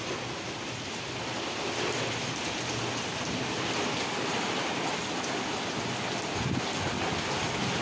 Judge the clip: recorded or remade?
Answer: recorded